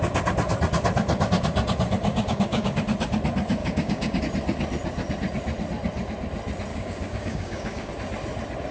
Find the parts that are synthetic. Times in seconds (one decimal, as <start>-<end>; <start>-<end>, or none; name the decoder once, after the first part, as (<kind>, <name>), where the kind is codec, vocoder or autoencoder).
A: 2.1-2.8 (codec, DAC); 3.6-4.2; 6.7-7.9